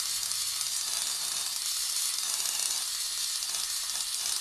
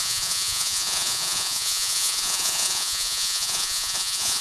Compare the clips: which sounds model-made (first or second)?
second